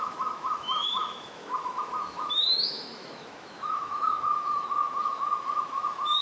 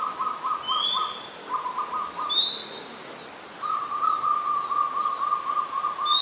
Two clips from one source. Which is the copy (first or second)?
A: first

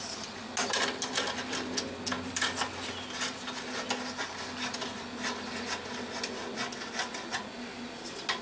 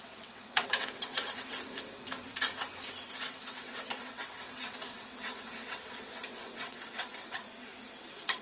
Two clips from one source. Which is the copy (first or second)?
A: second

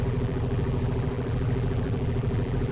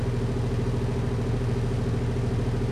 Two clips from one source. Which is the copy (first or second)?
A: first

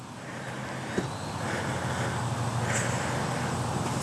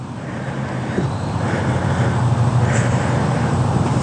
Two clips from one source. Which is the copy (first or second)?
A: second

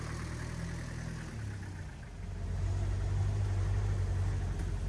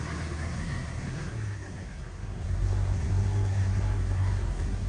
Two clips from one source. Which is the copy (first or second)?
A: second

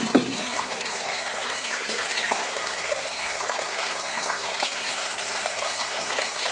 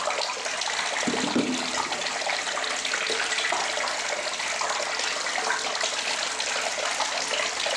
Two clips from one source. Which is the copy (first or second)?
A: first